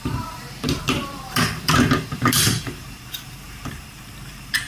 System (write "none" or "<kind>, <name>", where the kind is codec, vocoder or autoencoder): vocoder, BigVGAN v2